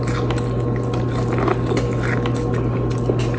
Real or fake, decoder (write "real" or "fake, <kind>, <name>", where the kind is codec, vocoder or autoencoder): real